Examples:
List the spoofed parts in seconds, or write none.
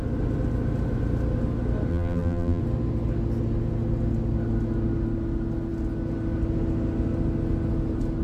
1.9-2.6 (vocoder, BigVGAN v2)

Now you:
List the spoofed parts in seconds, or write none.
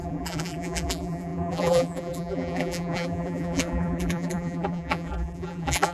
0.0-5.9 (vocoder, BigVGAN v2)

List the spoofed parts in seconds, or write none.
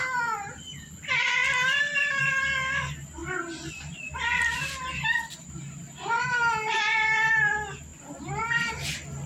3.2-6.3 (vocoder, BigVGAN v2); 7.9-8.7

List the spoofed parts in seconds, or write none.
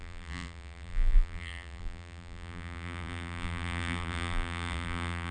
0.0-5.3 (vocoder, BigVGAN v2)